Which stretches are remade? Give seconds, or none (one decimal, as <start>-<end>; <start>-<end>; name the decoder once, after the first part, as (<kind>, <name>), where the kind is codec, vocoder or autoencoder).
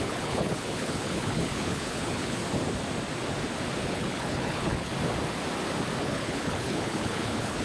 0.0-2.4 (codec, HILCodec); 3.8-4.9; 6.0-7.6